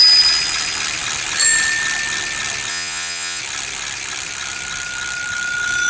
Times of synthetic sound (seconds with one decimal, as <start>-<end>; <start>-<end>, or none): 2.7-3.4